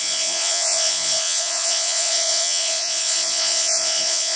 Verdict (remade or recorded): remade